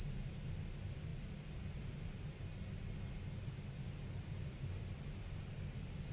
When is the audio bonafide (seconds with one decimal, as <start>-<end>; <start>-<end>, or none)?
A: 0.0-6.1